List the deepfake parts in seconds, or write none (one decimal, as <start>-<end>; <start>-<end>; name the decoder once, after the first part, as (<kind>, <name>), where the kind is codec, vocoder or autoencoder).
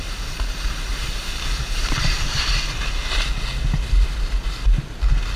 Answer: 0.9-2.5 (vocoder, BigVGAN v2)